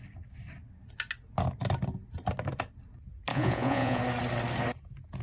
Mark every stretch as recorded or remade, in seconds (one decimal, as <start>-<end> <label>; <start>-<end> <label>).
0.0-3.3 recorded; 3.3-4.0 remade; 4.0-5.2 recorded